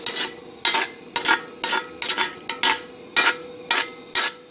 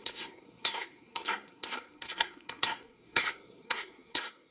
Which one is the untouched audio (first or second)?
first